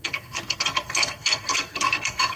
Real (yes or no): no